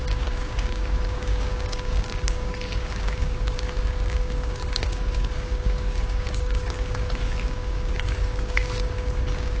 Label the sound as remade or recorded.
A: remade